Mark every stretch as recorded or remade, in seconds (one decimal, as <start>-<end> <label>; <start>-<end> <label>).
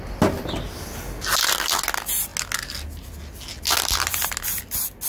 0.0-5.1 recorded